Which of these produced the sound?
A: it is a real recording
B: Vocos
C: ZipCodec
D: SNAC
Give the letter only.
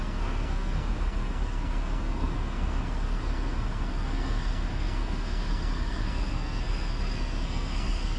D